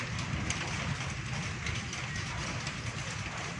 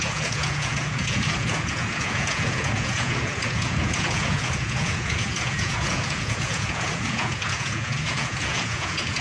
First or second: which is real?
first